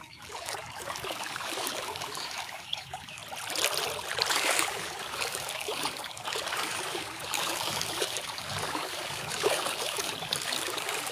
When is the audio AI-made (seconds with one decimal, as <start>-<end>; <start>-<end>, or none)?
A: 0.0-3.2; 4.3-11.1